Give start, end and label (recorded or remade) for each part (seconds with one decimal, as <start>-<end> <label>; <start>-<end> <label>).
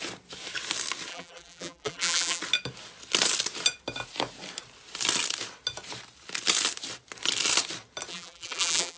0.0-1.1 recorded; 1.1-2.4 remade; 2.4-8.1 recorded; 8.1-9.0 remade